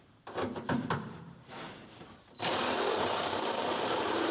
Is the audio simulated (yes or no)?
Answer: yes